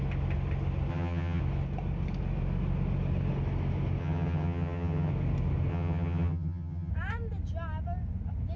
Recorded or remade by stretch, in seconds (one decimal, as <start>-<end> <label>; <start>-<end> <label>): 0.0-0.9 recorded; 0.9-1.4 remade; 1.4-4.0 recorded; 4.0-5.1 remade; 5.1-5.7 recorded; 5.7-6.9 remade; 6.9-8.6 recorded